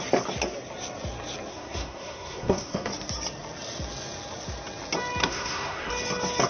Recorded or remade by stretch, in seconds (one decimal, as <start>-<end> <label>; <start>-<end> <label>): 0.0-1.5 recorded; 1.5-2.9 remade; 2.9-5.2 recorded; 5.2-5.9 remade; 5.9-6.5 recorded